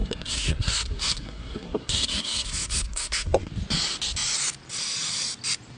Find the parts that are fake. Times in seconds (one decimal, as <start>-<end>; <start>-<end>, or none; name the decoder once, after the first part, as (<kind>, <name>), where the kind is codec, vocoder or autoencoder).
0.0-3.5 (codec, SNAC)